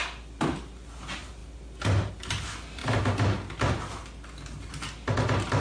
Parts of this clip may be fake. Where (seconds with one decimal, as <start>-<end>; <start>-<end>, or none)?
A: none